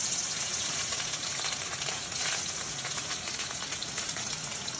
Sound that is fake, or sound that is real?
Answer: fake